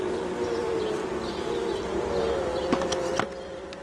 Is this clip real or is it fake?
real